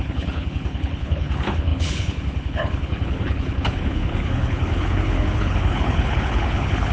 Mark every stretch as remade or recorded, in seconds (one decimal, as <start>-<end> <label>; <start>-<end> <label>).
0.0-6.9 remade